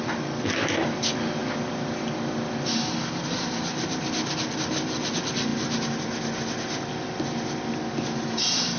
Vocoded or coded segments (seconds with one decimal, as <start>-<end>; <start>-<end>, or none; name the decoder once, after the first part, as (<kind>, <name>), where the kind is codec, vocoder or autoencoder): none